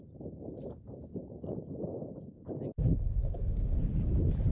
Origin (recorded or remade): recorded